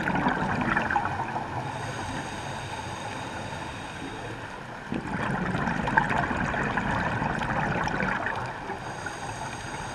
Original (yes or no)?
yes